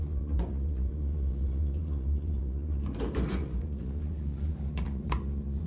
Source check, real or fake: fake